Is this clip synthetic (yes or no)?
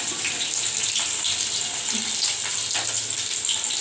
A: no